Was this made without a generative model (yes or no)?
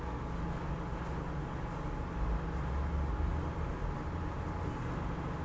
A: yes